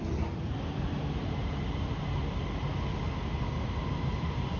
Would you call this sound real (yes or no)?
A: yes